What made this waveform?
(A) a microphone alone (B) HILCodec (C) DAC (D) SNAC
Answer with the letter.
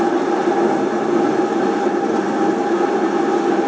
A